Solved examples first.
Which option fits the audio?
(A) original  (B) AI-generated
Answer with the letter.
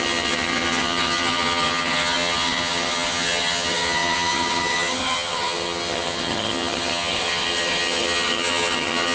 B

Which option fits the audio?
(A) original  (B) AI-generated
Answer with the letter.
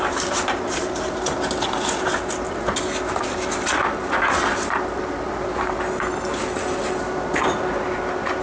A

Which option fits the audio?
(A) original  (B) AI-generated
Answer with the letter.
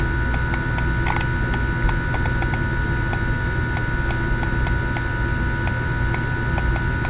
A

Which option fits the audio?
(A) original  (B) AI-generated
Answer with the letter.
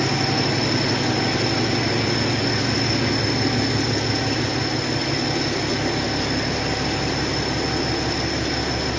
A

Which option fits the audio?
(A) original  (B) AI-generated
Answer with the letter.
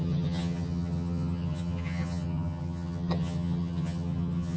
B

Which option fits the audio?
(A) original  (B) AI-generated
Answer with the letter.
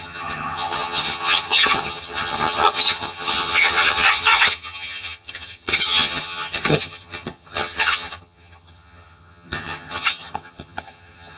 B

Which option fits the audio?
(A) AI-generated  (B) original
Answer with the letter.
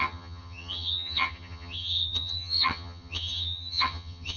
A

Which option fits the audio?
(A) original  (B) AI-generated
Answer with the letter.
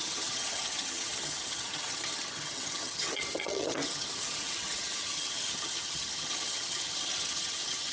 B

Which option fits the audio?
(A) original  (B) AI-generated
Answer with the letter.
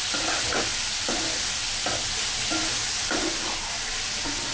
A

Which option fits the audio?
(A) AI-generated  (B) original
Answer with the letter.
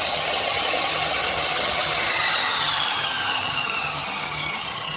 A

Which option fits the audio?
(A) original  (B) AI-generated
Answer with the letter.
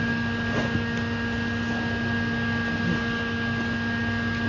A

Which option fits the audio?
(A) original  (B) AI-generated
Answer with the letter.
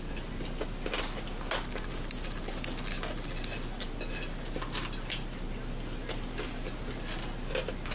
A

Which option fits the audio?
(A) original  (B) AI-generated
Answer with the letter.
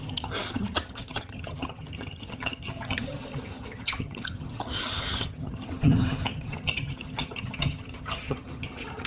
B